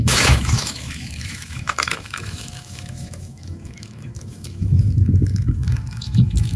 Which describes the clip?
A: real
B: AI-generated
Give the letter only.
B